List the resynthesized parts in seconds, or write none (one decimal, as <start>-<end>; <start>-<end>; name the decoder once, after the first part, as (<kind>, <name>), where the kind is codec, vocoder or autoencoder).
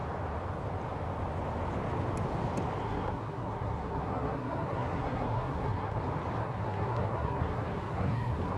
2.8-6.0 (codec, SNAC); 6.4-8.6